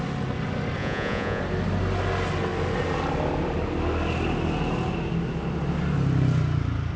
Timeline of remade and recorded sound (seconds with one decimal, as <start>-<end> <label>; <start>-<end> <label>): 0.0-0.8 recorded; 0.8-1.4 remade; 1.4-7.0 recorded

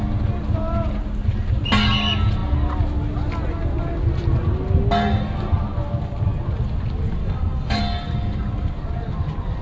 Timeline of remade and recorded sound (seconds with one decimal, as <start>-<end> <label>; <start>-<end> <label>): 0.0-7.2 recorded; 7.2-7.8 remade; 7.8-9.6 recorded

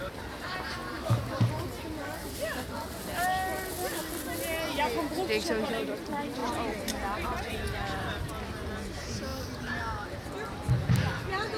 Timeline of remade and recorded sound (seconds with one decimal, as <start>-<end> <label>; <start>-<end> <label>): 0.0-0.8 remade; 0.8-5.7 recorded; 5.7-6.4 remade; 6.4-7.5 recorded; 7.5-9.3 remade; 9.3-11.6 recorded

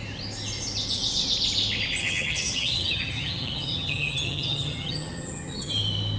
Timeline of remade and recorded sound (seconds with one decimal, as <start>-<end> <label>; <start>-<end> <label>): 0.0-2.0 recorded; 2.0-5.7 remade; 5.7-6.2 recorded